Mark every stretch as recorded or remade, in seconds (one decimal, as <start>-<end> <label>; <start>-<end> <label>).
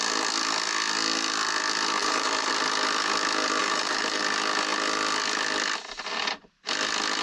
0.0-2.0 recorded; 2.0-2.5 remade; 2.5-3.6 recorded; 3.6-4.2 remade; 4.2-7.2 recorded